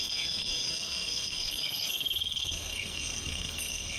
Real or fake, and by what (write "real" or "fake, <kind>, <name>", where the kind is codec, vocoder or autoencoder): fake, codec, SNAC